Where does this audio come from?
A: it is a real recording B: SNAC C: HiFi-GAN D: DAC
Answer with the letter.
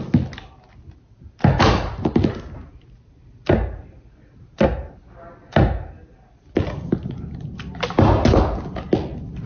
A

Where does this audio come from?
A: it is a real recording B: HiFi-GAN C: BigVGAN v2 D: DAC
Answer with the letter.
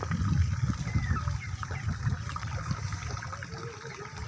A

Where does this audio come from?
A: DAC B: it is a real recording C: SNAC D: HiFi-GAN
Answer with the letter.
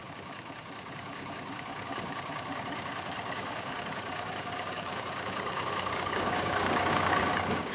A